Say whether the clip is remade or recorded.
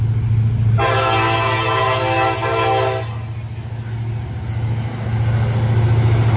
recorded